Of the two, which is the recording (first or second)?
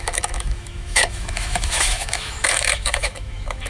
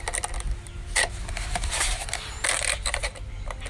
second